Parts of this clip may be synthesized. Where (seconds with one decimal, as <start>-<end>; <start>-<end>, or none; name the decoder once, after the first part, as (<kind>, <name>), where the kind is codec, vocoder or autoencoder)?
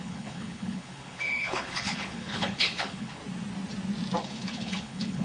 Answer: 0.0-3.2 (codec, HILCodec); 4.2-5.2